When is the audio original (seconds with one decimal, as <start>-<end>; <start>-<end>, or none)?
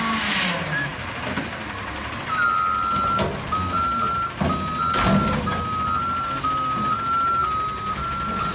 0.0-8.5